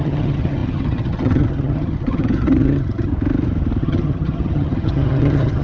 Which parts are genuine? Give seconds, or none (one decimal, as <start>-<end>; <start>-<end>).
3.1-3.8